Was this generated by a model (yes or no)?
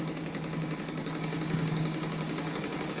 yes